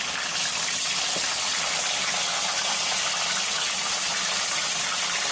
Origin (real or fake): real